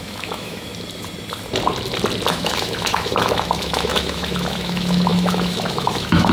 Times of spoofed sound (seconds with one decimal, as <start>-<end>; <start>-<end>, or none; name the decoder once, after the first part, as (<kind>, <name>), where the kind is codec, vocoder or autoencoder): 0.0-0.7 (autoencoder, DAC-VAE); 2.3-6.3